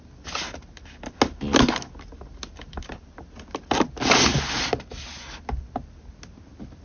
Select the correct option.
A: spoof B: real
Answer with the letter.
B